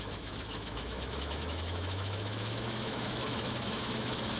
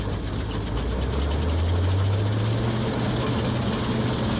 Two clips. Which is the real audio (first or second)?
second